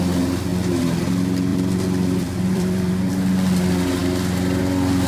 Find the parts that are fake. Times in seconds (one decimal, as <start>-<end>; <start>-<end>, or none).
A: 1.5-3.1